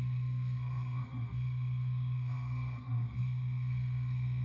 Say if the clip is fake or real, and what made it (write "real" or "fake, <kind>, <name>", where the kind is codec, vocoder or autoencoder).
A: fake, codec, SNAC